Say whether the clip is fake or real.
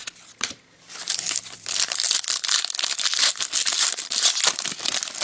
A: real